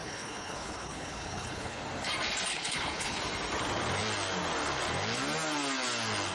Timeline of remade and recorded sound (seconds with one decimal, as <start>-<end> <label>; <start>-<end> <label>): 0.0-1.8 remade; 1.8-2.5 recorded; 2.5-3.2 remade; 3.2-6.3 recorded